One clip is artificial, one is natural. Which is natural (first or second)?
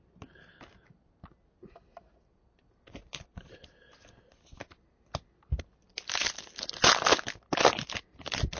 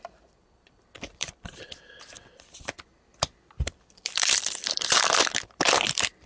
first